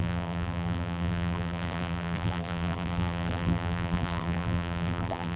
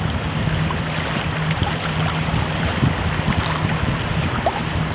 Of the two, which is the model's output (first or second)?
first